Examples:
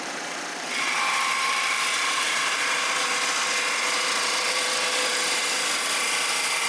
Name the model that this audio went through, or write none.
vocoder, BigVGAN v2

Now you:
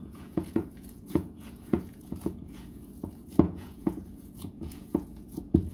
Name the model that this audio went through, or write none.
vocoder, Vocos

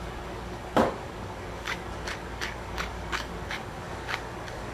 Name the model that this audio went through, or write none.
codec, DAC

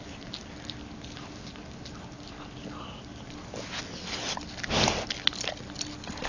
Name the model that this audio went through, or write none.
none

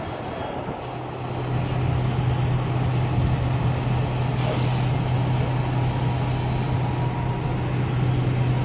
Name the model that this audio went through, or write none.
none